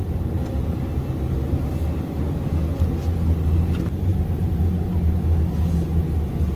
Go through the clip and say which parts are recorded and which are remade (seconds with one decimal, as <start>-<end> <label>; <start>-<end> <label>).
0.0-6.6 recorded